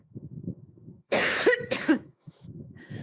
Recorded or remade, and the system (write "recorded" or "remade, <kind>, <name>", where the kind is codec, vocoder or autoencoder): remade, autoencoder, DAC-VAE